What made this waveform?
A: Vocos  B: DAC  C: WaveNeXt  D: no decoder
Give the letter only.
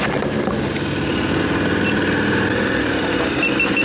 D